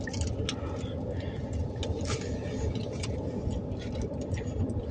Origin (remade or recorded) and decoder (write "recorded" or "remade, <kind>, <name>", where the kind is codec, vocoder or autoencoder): recorded